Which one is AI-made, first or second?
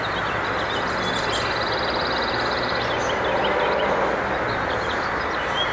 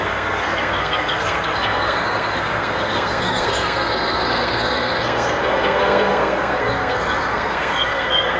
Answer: second